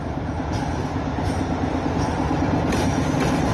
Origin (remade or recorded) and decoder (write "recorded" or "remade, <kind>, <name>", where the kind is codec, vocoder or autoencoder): recorded